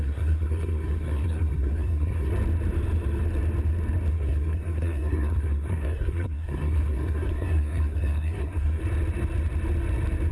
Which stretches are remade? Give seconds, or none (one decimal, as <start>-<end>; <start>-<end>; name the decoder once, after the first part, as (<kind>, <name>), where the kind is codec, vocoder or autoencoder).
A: 0.0-2.3 (codec, SNAC); 4.1-8.8